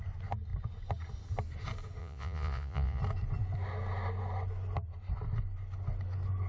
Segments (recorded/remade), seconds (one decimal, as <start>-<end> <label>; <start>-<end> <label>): 0.0-2.0 recorded; 2.0-3.0 remade; 3.0-6.5 recorded